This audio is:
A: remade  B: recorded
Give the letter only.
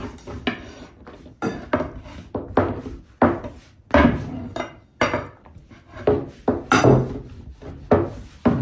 B